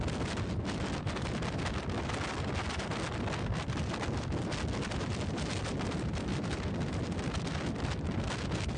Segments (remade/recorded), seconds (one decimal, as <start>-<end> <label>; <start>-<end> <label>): 0.0-8.8 recorded